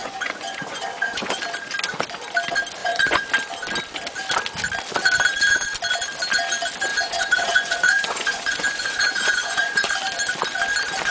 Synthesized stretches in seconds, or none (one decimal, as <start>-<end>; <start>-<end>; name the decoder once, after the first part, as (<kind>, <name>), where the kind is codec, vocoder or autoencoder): 0.0-1.4 (vocoder, Vocos); 2.8-3.3; 6.9-9.9